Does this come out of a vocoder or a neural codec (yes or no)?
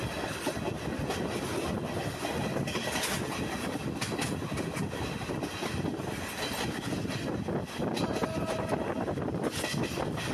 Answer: no